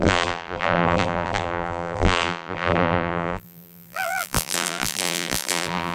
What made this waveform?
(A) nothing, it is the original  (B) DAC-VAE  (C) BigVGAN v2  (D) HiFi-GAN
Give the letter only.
C